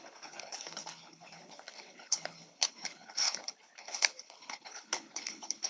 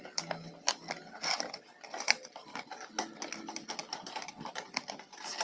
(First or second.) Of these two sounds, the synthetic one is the first